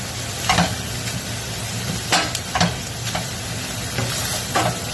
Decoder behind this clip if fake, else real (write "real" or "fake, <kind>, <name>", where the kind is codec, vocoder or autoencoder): real